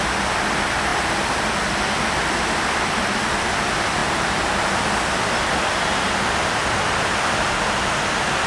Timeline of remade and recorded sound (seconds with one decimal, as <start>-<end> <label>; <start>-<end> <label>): 0.0-8.5 recorded